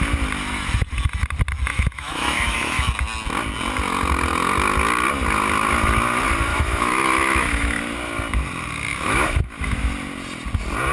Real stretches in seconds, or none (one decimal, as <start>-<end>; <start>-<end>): 0.0-1.7; 2.9-6.5; 7.8-8.9; 9.8-10.9